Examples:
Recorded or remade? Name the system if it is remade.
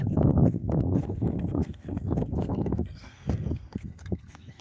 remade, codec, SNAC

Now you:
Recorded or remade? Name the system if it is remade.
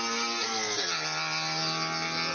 recorded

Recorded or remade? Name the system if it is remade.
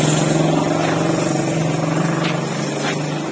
recorded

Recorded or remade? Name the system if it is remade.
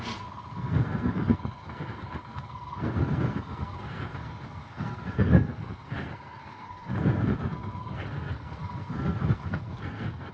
remade, codec, SNAC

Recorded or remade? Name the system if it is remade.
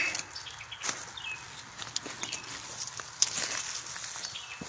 recorded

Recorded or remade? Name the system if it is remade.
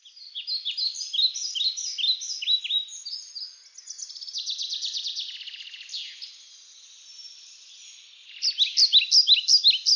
recorded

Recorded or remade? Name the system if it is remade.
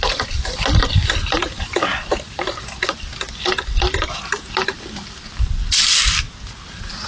recorded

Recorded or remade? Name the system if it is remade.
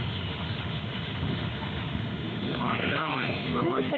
remade, autoencoder, DAC-VAE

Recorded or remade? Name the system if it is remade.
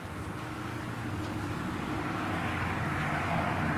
remade, codec, DAC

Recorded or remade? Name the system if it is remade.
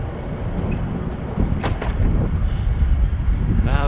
remade, vocoder, BigVGAN v2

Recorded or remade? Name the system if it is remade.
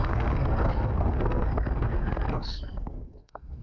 remade, codec, SNAC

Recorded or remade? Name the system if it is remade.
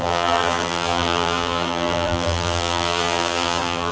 remade, vocoder, BigVGAN v2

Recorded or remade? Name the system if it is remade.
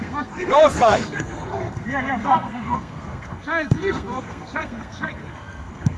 remade, codec, SNAC